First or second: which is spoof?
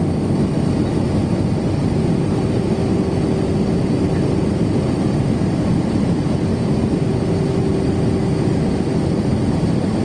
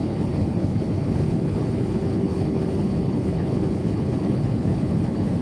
second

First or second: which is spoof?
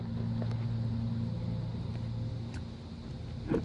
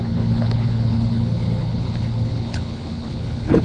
second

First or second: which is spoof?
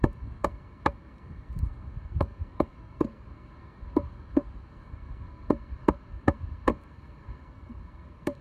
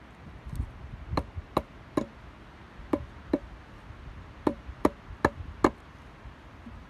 first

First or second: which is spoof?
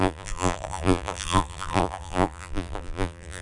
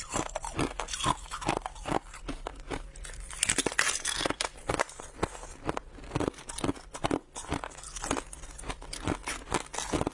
first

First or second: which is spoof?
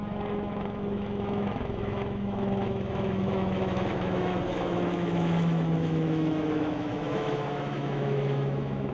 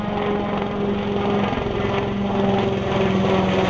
first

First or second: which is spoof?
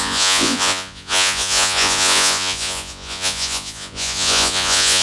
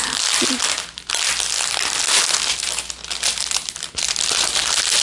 first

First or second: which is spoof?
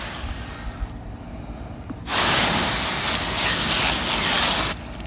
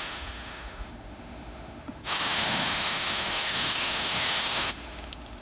second